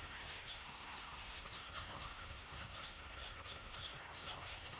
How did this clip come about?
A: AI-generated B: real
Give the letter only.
A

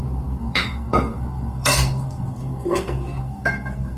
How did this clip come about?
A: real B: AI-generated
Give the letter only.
B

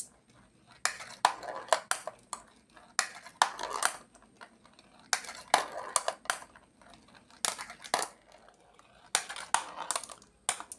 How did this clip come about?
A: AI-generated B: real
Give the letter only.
B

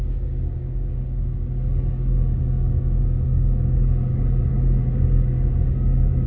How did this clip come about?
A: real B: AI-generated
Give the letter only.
B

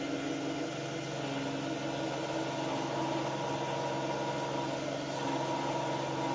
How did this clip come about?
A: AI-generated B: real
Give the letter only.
B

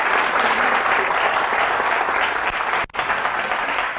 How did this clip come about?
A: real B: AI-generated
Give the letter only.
B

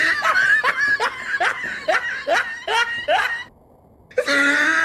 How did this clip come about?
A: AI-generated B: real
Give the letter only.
B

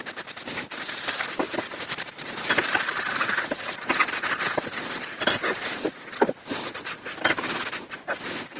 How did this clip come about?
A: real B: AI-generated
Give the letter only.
A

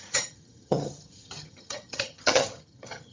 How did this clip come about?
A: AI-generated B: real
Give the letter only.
A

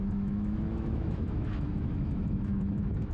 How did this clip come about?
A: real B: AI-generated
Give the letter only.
B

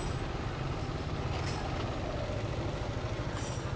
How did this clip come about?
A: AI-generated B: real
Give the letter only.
B